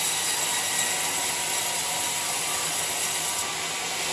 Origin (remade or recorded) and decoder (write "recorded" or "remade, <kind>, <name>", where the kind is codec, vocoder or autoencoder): recorded